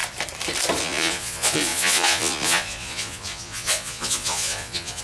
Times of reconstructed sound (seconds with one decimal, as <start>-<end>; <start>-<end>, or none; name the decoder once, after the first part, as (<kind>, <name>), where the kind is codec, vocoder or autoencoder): 0.8-5.0 (vocoder, Vocos)